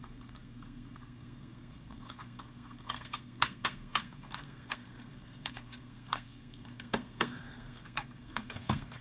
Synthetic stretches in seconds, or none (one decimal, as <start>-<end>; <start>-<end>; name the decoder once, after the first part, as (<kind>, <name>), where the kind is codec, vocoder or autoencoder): 0.0-9.0 (codec, SNAC)